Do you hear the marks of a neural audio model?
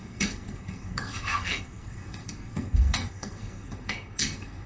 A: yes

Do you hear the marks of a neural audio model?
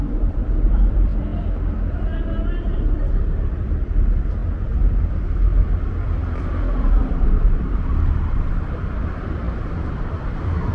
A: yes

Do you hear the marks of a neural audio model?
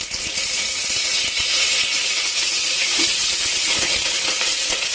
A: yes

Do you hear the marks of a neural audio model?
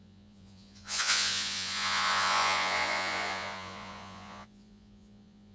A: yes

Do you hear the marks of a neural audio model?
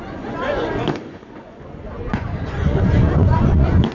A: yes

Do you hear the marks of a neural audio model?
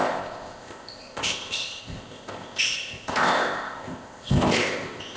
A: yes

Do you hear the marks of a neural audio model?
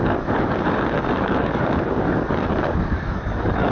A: yes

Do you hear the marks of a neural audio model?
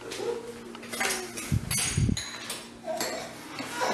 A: no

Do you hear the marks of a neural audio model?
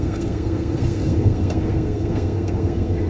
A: yes